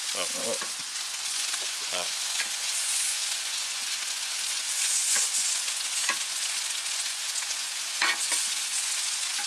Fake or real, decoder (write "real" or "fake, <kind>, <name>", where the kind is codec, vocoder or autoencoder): fake, vocoder, Vocos